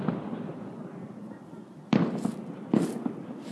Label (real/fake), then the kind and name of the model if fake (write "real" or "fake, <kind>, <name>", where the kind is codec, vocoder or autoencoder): real